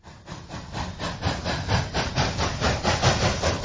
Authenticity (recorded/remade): recorded